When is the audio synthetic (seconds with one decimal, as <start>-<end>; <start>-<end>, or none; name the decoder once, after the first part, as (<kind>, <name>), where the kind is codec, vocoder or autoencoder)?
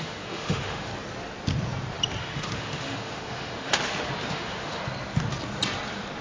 0.0-0.9 (autoencoder, DAC-VAE); 2.2-3.8; 4.3-4.8